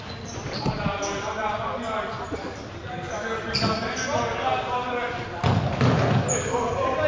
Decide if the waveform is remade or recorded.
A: recorded